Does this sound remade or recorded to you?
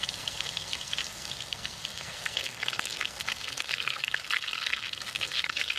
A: remade